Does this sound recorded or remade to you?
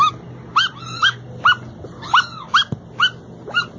recorded